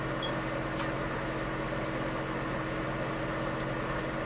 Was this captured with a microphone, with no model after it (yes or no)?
yes